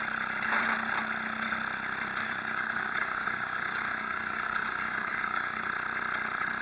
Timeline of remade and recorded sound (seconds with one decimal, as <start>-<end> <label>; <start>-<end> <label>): 0.0-2.2 recorded; 2.2-5.7 remade; 5.7-6.6 recorded